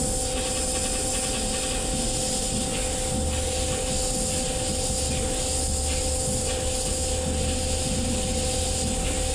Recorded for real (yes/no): yes